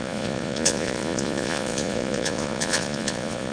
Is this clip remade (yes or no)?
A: yes